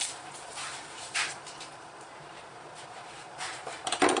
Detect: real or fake fake